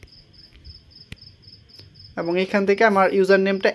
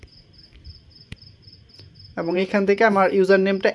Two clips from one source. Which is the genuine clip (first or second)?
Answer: first